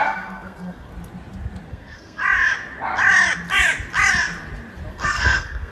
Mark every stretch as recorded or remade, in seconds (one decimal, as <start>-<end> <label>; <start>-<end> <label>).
0.0-0.9 remade; 0.9-1.7 recorded; 1.7-2.2 remade; 2.2-4.9 recorded; 4.9-5.7 remade